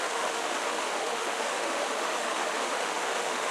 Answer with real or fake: fake